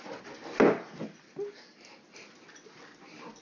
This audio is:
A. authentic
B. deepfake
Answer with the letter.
A